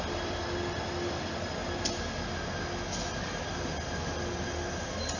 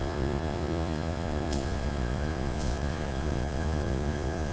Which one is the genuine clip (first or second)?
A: first